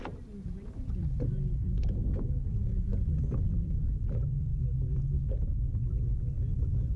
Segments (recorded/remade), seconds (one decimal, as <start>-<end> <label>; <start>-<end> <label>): 0.0-7.0 remade